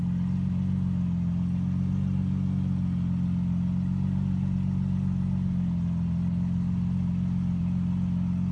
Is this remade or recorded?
recorded